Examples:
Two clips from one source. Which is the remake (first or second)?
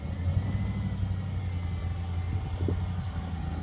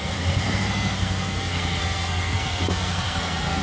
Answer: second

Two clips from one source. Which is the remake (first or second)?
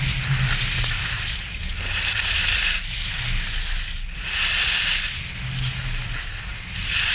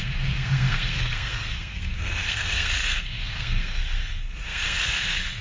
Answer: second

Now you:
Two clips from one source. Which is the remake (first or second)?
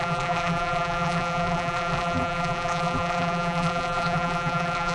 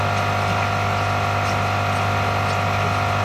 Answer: first